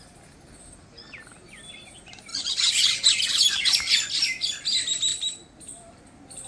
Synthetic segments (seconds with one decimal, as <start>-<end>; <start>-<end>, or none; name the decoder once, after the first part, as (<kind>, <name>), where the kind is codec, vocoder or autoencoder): 2.3-4.1 (vocoder, Vocos)